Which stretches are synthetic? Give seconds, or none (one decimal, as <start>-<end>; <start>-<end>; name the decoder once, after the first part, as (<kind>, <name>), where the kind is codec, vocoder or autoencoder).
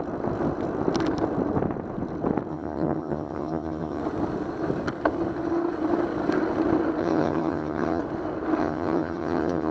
2.5-4.0 (vocoder, HiFi-GAN); 7.0-8.0; 8.6-9.7